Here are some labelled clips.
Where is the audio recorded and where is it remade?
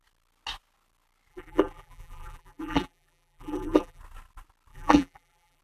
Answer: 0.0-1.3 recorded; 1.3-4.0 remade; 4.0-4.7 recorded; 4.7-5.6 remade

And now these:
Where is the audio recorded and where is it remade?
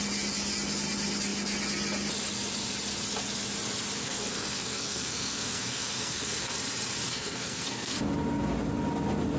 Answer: 0.0-4.0 recorded; 4.0-6.5 remade; 6.5-7.1 recorded; 7.1-8.0 remade; 8.0-9.4 recorded